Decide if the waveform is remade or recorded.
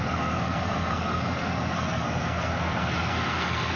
remade